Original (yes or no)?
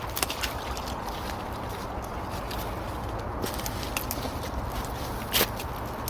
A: yes